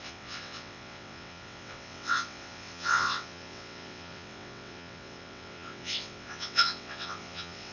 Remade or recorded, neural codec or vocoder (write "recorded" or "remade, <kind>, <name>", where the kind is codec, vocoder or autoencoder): remade, vocoder, WaveNeXt